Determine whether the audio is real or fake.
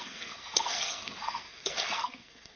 fake